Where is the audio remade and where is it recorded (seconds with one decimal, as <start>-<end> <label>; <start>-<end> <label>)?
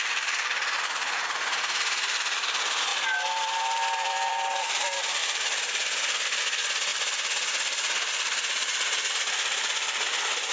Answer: 0.0-2.9 recorded; 2.9-4.6 remade; 4.6-5.2 recorded; 5.2-6.4 remade; 6.4-10.5 recorded